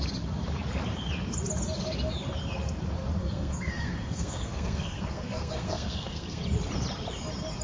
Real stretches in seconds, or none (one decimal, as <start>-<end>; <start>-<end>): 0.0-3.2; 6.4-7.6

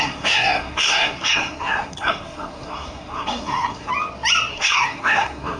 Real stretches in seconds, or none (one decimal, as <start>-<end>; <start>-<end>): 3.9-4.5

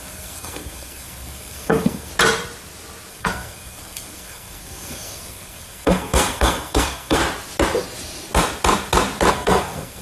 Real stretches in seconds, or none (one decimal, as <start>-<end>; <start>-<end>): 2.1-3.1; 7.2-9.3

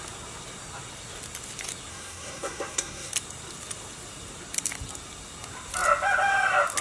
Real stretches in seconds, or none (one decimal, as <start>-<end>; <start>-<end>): 0.0-1.9; 3.1-6.8